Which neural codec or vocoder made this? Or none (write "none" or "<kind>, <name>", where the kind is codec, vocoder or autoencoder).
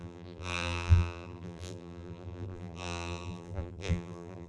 vocoder, BigVGAN v2